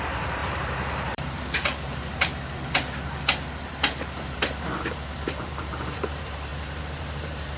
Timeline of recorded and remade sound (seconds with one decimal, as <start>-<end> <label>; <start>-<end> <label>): 0.0-2.0 remade; 2.0-3.5 recorded; 3.5-7.6 remade